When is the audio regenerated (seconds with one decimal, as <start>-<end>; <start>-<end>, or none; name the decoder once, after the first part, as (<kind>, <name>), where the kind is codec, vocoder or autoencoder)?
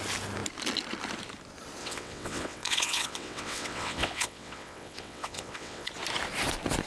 1.8-5.9 (vocoder, WaveNeXt)